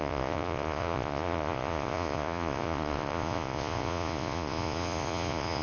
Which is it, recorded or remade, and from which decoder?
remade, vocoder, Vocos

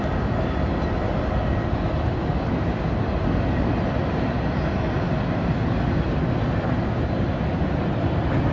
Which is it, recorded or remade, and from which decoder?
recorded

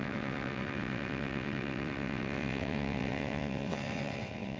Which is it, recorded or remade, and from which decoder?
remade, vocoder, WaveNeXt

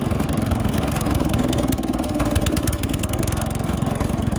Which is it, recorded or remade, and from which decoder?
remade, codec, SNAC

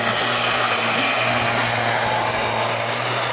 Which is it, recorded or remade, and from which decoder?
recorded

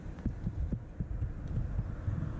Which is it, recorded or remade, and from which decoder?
recorded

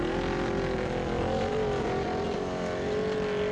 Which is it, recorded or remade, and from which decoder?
recorded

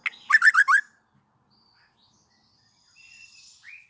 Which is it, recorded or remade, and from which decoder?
recorded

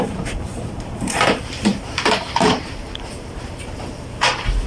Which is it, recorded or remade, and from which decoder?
remade, vocoder, BigVGAN v2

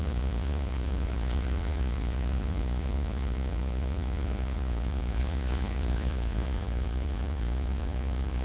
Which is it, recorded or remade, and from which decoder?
remade, vocoder, Vocos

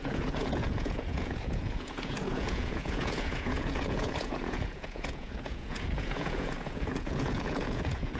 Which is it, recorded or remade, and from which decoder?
remade, vocoder, Vocos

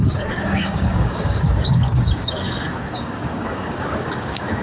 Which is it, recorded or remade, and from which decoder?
remade, codec, DAC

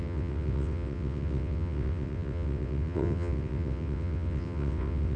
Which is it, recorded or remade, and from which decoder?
remade, vocoder, WaveNeXt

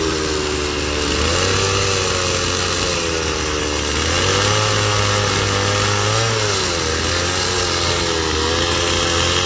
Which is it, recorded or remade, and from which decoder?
recorded